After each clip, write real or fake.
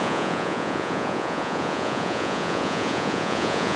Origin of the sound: fake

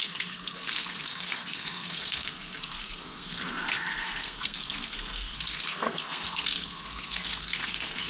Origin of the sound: fake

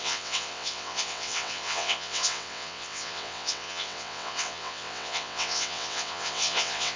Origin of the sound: fake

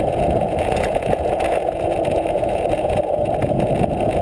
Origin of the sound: fake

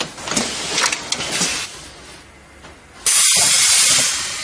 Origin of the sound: real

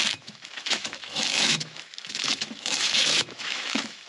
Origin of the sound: fake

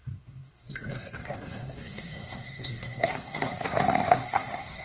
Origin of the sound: fake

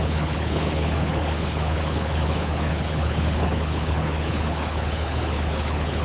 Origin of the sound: fake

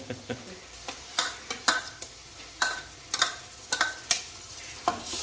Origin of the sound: real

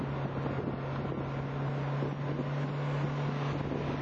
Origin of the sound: real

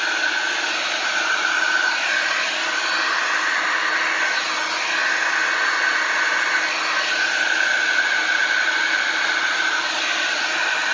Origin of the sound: real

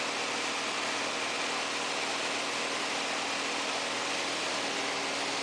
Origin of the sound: real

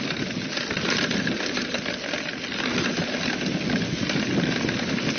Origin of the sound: real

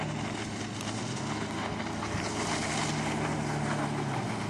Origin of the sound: real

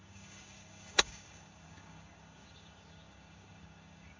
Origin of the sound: fake